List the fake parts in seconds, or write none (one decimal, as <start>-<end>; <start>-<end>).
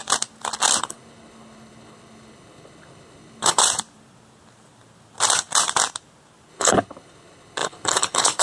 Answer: 0.8-3.6; 6.5-8.4